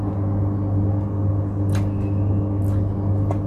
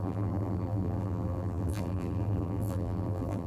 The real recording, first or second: first